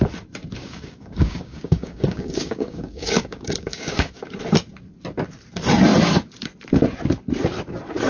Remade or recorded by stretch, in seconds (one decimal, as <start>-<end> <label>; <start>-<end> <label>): 0.0-0.6 recorded; 0.6-4.2 remade; 4.2-8.1 recorded

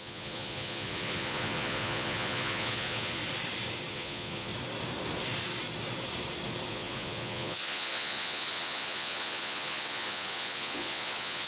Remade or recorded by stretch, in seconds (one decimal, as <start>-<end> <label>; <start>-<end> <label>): 0.0-3.2 remade; 3.2-3.9 recorded; 3.9-4.5 remade; 4.5-6.7 recorded; 6.7-11.5 remade

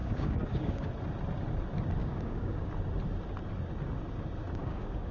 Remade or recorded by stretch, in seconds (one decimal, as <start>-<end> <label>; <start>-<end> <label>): 0.0-0.9 remade; 0.9-2.0 recorded; 2.0-2.7 remade; 2.7-4.6 recorded; 4.6-5.1 remade

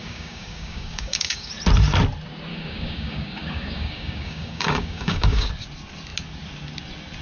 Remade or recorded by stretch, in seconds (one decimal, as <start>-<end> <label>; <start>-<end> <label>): 0.0-1.5 remade; 1.5-2.5 recorded; 2.5-5.5 remade; 5.5-7.2 recorded

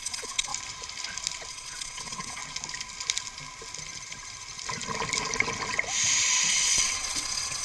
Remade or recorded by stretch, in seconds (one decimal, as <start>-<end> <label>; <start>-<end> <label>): 0.0-0.5 remade; 0.5-1.5 recorded; 1.5-2.4 remade; 2.4-6.5 recorded; 6.5-7.6 remade

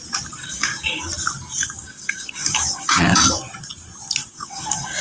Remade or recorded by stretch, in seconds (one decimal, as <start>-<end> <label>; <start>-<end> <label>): 0.0-0.4 recorded; 0.4-1.1 remade; 1.1-1.6 recorded; 1.6-3.2 remade; 3.2-4.2 recorded; 4.2-5.0 remade